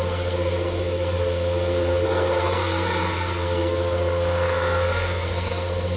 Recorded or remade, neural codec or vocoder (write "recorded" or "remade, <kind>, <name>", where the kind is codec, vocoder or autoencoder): remade, codec, SNAC